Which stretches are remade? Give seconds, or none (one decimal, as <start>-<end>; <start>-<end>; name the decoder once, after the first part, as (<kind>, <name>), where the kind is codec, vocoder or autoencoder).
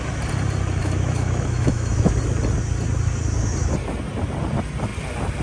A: 0.8-2.2 (autoencoder, DAC-VAE)